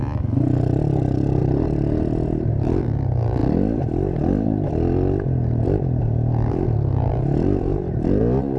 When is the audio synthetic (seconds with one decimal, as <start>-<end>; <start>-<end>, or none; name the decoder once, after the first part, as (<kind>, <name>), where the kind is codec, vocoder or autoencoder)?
1.4-2.5 (vocoder, BigVGAN v2); 7.1-7.8